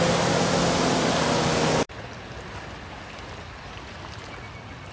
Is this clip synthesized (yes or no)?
no